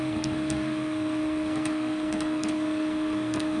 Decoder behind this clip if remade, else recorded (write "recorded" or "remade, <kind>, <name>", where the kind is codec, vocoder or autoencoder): remade, codec, SNAC